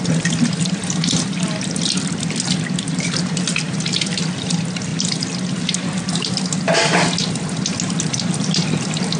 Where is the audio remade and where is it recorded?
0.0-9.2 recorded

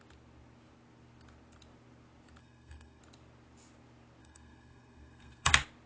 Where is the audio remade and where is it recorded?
0.0-2.4 recorded; 2.4-3.0 remade; 3.0-4.2 recorded; 4.2-5.5 remade; 5.5-5.9 recorded

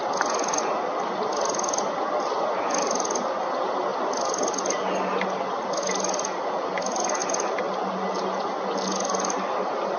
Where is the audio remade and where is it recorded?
0.0-10.0 recorded

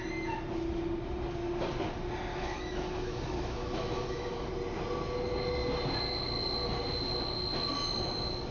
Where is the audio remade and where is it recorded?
0.0-2.3 recorded; 2.3-4.5 remade; 4.5-8.5 recorded

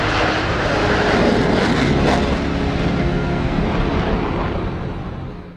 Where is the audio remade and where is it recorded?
0.0-3.0 recorded; 3.0-3.6 remade; 3.6-5.6 recorded

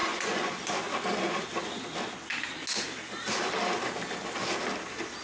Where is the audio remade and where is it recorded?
0.0-0.6 remade; 0.6-5.2 recorded

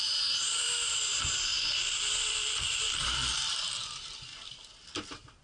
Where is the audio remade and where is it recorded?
0.0-4.3 remade; 4.3-5.4 recorded

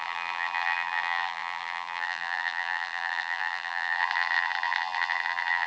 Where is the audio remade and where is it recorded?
0.0-5.7 remade